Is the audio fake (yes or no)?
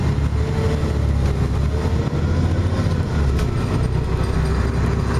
no